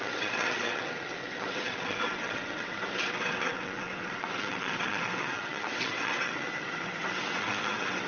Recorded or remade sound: remade